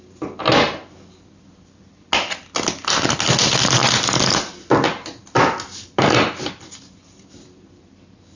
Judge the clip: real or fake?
real